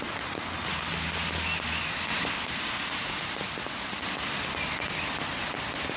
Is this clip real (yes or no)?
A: yes